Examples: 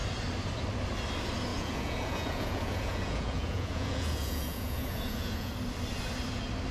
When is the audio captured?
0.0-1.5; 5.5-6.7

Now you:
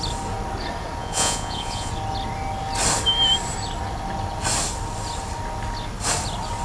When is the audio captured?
0.0-1.0; 1.9-6.6

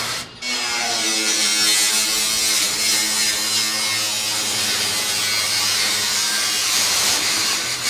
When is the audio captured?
1.5-5.4